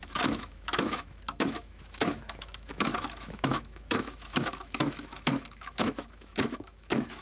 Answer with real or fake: fake